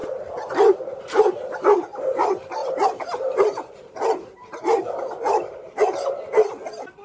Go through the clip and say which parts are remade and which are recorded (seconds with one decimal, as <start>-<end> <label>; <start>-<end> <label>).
0.0-1.5 remade; 1.5-2.6 recorded; 2.6-5.7 remade; 5.7-7.0 recorded